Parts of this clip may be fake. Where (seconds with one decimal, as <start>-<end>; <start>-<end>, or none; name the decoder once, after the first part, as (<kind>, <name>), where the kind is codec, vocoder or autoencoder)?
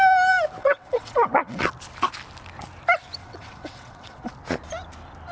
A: 0.6-1.7 (vocoder, WaveNeXt); 3.2-4.3